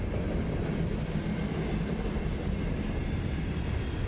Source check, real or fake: real